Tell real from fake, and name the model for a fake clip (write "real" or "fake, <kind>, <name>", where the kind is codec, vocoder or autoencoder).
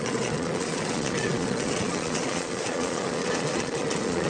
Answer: fake, vocoder, Vocos